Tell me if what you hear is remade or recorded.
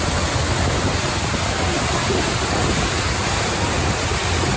recorded